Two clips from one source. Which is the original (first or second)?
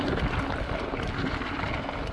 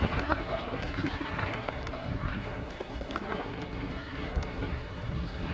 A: first